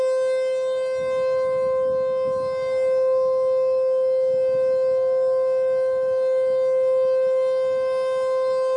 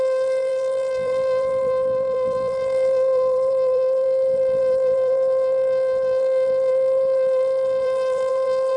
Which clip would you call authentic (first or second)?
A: first